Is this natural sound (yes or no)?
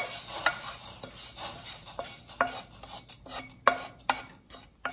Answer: yes